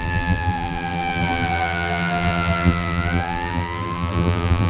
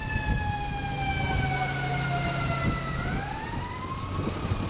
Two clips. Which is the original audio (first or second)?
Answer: second